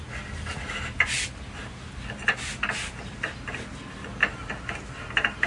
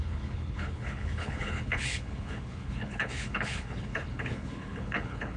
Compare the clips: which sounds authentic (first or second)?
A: first